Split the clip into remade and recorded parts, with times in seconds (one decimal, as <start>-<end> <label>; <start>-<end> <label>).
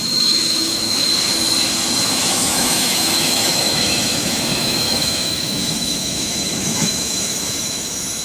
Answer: 0.0-1.1 remade; 1.1-2.0 recorded; 2.0-8.2 remade